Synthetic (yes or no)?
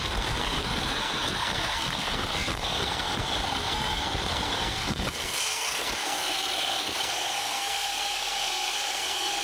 yes